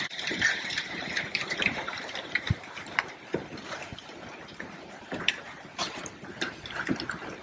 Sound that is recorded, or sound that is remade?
remade